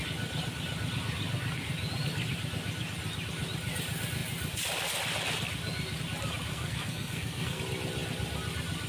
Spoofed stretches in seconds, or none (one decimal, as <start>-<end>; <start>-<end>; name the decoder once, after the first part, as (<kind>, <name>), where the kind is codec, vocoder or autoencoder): 6.5-7.6 (codec, SNAC)